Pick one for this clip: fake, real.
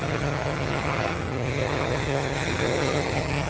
fake